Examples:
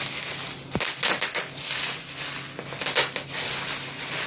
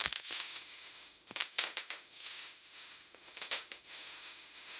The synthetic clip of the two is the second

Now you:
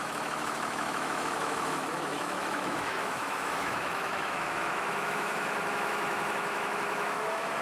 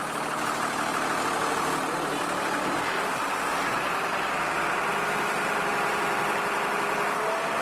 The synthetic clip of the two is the first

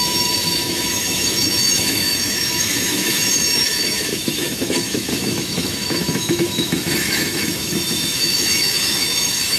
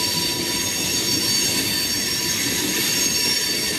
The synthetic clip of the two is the first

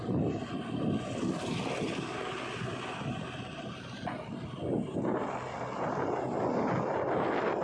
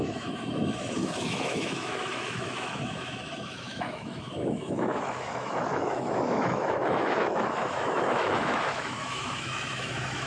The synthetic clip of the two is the second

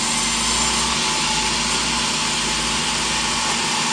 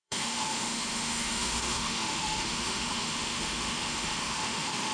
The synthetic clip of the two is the second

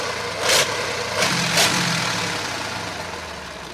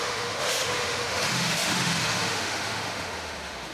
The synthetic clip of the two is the second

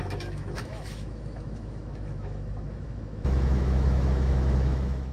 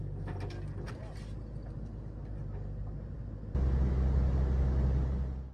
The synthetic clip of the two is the first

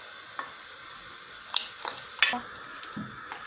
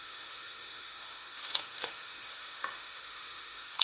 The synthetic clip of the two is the second